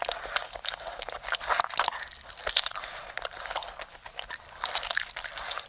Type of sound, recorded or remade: recorded